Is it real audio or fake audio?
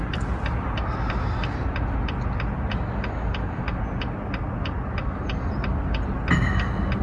real